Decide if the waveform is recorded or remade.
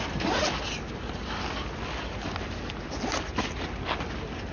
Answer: recorded